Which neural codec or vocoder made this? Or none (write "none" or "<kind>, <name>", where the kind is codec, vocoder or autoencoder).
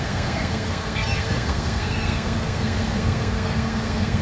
codec, SNAC